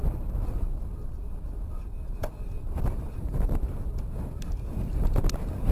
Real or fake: real